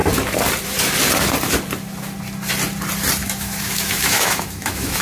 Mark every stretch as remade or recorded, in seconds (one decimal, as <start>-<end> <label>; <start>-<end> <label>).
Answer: 0.0-3.2 recorded; 3.2-5.0 remade